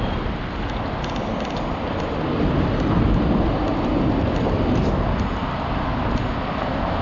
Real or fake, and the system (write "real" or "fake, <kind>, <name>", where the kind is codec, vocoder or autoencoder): real